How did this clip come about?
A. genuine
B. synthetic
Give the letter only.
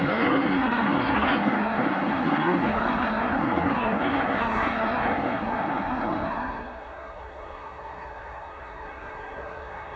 B